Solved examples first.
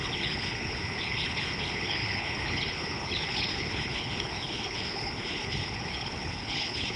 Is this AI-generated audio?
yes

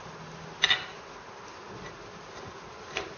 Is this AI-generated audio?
no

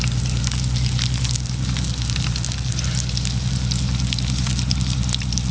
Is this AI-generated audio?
no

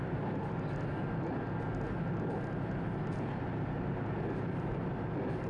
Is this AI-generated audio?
no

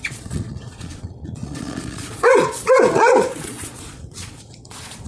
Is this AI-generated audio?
yes